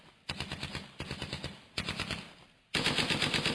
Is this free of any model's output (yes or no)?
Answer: yes